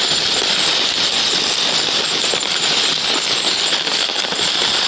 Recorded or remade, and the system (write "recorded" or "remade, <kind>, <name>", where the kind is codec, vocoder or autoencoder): recorded